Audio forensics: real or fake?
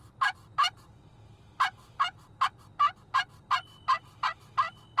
real